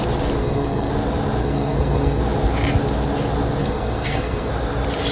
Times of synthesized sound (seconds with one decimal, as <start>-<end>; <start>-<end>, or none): 0.4-0.9; 1.4-2.2; 3.6-4.5